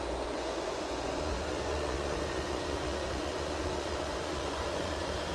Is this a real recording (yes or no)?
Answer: no